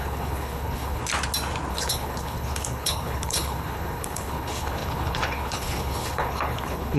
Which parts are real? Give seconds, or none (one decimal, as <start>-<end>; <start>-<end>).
1.0-1.7